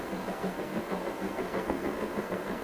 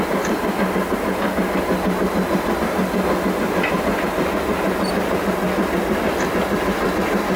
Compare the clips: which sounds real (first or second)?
second